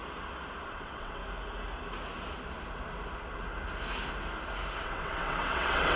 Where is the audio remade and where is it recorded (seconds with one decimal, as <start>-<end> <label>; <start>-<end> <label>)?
0.0-0.7 recorded; 0.7-1.2 remade; 1.2-4.8 recorded; 4.8-6.0 remade